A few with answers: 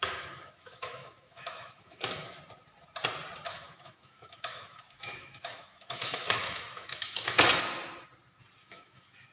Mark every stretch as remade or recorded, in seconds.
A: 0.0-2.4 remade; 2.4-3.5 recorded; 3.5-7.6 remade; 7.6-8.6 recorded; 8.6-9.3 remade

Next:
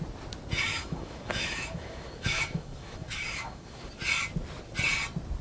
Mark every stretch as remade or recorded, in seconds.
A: 0.0-0.7 recorded; 0.7-3.9 remade; 3.9-5.4 recorded

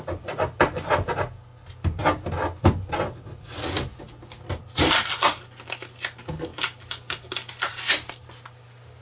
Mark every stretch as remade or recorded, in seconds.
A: 0.0-9.0 recorded

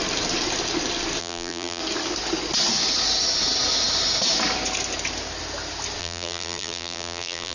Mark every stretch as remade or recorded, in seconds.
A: 0.0-1.2 recorded; 1.2-1.8 remade; 1.8-6.0 recorded; 6.0-7.5 remade

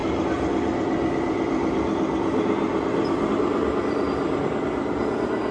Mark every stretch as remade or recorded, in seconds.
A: 0.0-5.5 recorded

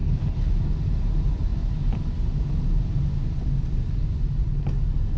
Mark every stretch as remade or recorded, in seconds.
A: 0.0-0.5 remade; 0.5-5.2 recorded

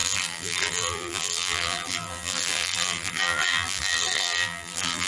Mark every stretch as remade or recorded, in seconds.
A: 0.0-5.1 remade

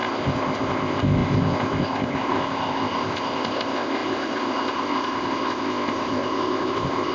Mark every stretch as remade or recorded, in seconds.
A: 0.0-7.1 remade